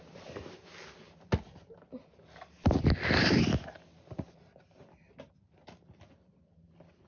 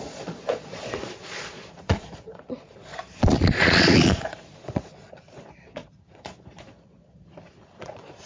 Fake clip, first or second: second